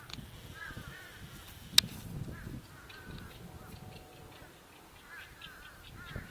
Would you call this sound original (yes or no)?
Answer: yes